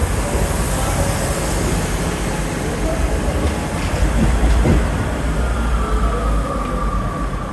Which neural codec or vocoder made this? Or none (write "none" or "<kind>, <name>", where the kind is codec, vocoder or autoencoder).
none